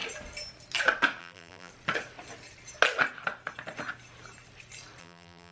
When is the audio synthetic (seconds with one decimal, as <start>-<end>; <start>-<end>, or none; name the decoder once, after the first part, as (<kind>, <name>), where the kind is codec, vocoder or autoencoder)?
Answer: 1.2-1.7 (vocoder, BigVGAN v2); 5.0-5.5